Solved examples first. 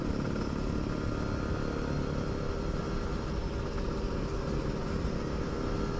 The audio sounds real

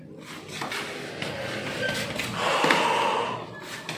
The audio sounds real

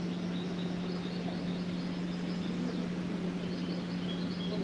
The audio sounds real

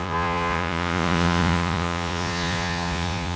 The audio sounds fake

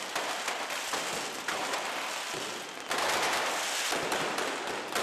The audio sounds real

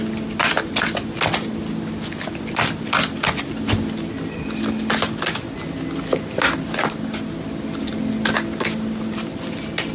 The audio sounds real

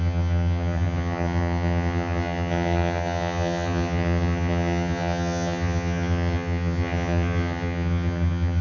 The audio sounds fake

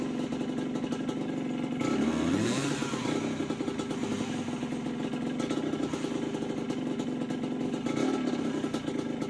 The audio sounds real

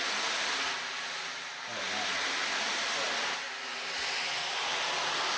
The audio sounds real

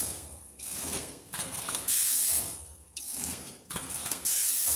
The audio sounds fake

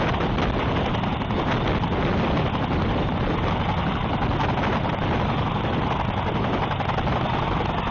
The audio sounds real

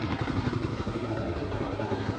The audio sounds fake